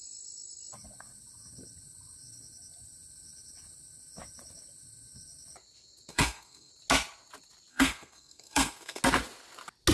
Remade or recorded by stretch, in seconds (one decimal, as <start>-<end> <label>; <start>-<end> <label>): 0.0-6.1 recorded; 6.1-6.7 remade; 6.7-7.7 recorded; 7.7-9.0 remade; 9.0-9.9 recorded